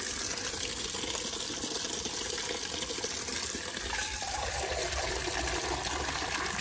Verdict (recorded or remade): recorded